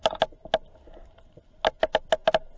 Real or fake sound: real